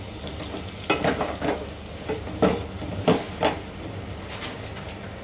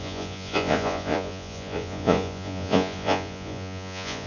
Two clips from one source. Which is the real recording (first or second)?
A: first